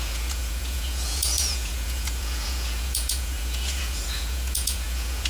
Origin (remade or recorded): remade